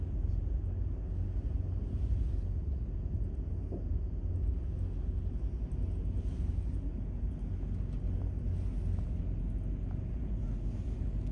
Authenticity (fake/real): real